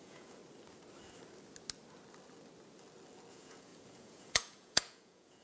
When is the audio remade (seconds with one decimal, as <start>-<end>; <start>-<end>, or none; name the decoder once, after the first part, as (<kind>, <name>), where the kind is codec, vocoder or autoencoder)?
0.0-0.4 (vocoder, Vocos); 3.3-5.4